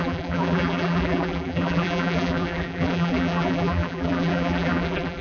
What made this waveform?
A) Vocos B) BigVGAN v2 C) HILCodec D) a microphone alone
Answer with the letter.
B